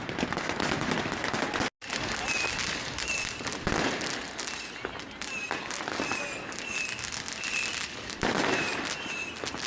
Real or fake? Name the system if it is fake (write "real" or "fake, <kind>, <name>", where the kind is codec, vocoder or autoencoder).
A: real